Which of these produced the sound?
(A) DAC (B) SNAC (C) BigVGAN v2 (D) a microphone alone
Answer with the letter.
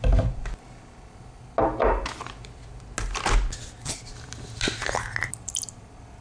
D